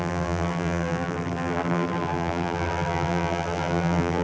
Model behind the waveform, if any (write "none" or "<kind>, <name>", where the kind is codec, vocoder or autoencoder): vocoder, BigVGAN v2